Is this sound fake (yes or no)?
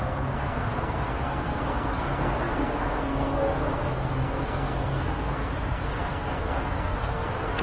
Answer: yes